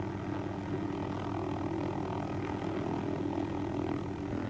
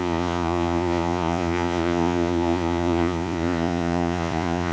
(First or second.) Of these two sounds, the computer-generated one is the second